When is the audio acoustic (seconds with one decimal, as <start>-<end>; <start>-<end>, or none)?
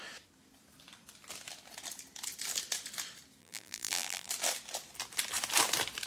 0.0-3.4; 4.3-6.1